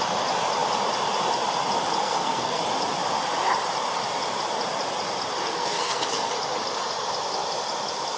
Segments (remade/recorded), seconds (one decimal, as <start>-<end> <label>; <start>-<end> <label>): 0.0-2.0 recorded; 2.0-2.6 remade; 2.6-5.5 recorded; 5.5-6.3 remade; 6.3-8.2 recorded